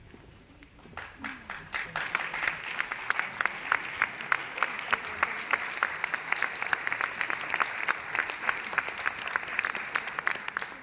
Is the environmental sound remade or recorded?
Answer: recorded